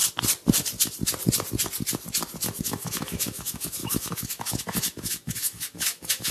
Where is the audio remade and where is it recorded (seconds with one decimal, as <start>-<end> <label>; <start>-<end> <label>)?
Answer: 0.0-2.6 recorded; 2.6-6.3 remade

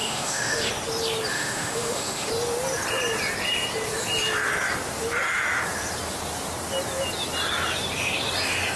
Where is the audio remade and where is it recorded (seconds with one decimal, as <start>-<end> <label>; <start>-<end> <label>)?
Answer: 0.0-0.7 remade; 0.7-1.3 recorded; 1.3-2.3 remade; 2.3-8.8 recorded

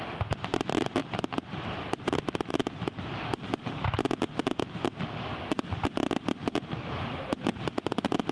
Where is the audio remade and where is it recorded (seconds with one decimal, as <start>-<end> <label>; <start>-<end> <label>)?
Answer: 0.0-8.3 recorded

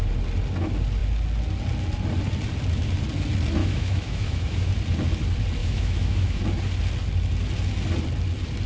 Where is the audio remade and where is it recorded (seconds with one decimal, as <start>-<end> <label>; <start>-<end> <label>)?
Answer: 0.0-3.6 recorded; 3.6-4.7 remade; 4.7-5.6 recorded; 5.6-6.4 remade; 6.4-8.7 recorded

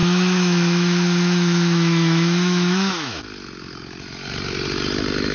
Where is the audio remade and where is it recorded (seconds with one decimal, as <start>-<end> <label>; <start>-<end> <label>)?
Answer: 0.0-3.2 remade; 3.2-5.3 recorded

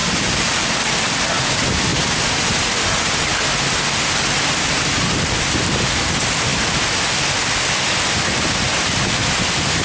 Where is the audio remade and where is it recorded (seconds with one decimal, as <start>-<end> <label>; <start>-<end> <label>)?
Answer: 0.0-9.8 recorded

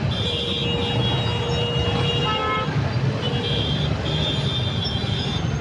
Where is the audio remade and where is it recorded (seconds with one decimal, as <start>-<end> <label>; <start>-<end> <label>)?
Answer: 0.0-5.6 recorded

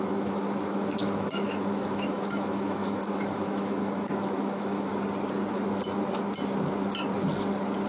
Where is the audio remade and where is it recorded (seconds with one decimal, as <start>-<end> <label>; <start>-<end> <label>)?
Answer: 0.0-4.9 remade; 4.9-7.9 recorded